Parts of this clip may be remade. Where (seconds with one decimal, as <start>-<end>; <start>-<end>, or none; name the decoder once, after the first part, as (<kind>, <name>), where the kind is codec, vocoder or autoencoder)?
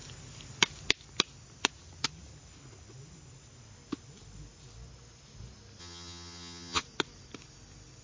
5.8-6.8 (vocoder, HiFi-GAN)